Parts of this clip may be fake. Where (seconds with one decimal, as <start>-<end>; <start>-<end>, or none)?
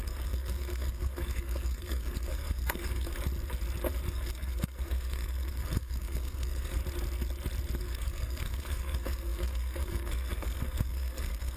0.0-3.1; 4.1-6.8; 7.8-11.6